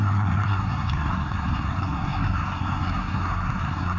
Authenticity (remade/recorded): remade